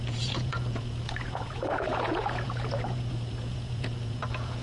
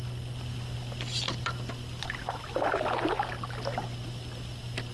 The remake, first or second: first